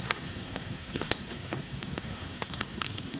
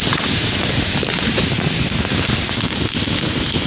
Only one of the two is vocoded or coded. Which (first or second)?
first